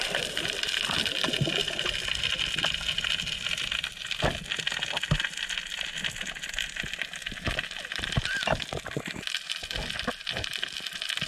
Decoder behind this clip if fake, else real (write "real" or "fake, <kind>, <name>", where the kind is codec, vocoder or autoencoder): real